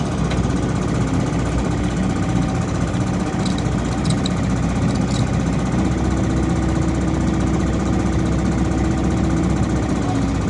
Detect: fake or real real